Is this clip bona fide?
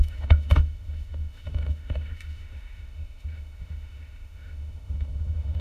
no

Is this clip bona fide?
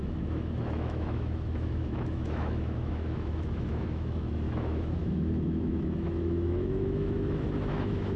no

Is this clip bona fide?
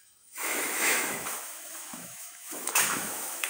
no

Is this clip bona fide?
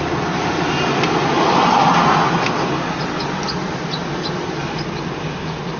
yes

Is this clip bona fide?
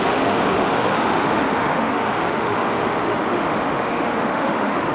no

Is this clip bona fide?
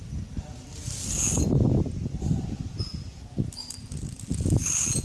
yes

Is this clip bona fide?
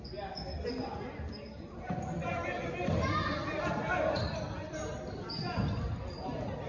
yes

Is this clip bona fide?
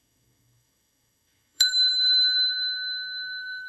no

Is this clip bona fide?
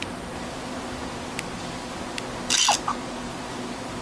yes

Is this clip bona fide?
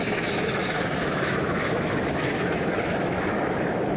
no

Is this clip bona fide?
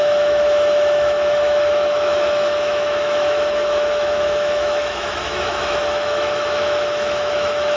no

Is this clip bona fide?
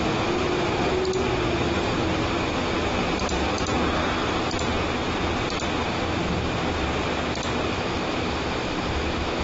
yes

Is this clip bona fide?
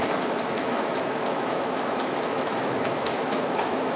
no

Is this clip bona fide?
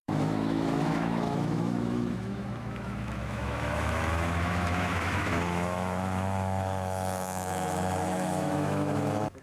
no